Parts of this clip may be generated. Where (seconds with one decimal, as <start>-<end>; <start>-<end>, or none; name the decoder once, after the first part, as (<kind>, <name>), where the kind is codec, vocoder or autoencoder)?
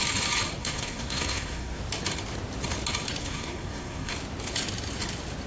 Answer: 0.6-1.8 (codec, SNAC); 3.2-4.1